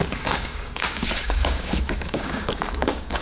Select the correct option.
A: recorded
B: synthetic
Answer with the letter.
B